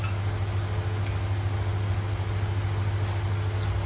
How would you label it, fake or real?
real